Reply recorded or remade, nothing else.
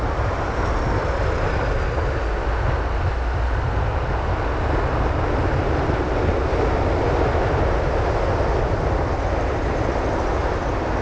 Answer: recorded